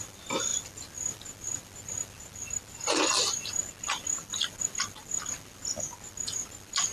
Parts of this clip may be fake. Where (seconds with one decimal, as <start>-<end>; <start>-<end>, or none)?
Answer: none